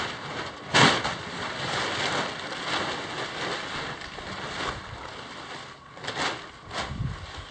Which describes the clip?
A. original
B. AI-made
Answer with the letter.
A